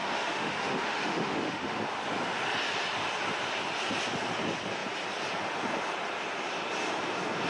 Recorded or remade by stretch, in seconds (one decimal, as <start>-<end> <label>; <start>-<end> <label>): 0.0-1.8 remade; 1.8-7.5 recorded